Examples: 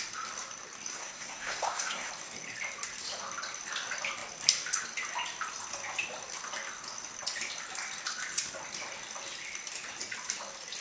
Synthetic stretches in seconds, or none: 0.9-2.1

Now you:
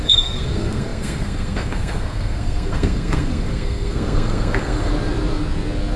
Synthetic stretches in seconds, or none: 0.0-4.9

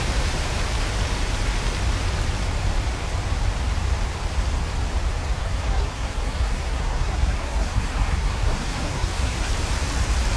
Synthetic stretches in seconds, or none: 5.4-9.5

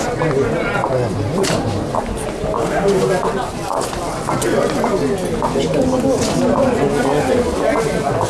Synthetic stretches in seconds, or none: 2.6-3.1

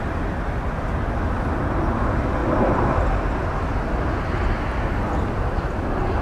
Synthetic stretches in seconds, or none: none

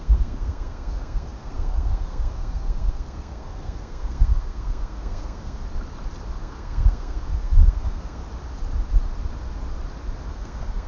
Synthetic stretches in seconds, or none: 0.0-5.6; 6.4-8.2; 10.3-10.9